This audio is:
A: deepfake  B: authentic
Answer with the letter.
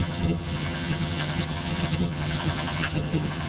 A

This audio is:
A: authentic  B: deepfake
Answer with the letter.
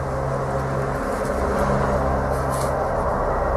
A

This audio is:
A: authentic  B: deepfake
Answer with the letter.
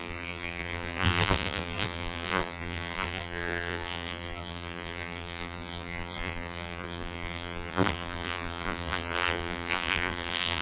B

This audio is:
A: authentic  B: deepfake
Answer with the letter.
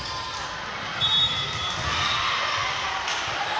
A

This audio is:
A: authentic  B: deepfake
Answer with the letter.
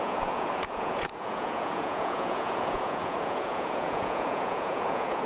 B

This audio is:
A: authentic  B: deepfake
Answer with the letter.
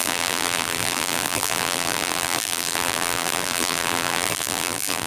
B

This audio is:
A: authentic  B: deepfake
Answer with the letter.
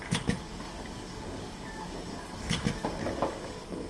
B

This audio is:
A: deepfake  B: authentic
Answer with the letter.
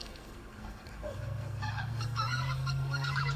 A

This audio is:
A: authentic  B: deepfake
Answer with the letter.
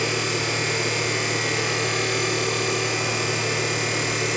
A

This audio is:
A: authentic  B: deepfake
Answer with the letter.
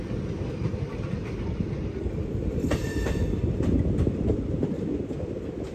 A